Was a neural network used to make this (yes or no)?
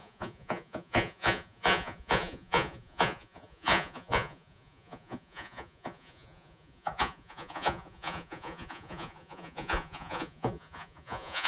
yes